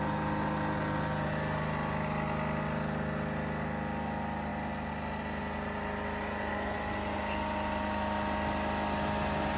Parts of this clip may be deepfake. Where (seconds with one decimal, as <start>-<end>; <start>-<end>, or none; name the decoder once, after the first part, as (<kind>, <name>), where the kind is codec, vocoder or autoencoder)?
none